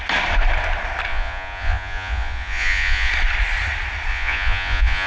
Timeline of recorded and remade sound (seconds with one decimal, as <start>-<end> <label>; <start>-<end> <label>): 0.0-1.1 recorded; 1.1-3.1 remade; 3.1-4.1 recorded; 4.1-5.1 remade